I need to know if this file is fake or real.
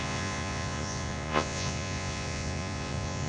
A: fake